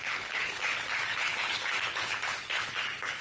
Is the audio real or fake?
fake